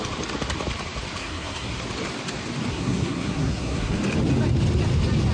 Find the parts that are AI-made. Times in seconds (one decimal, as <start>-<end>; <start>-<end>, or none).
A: 1.2-1.8; 2.7-4.0